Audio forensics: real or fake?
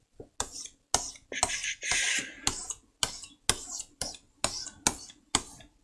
real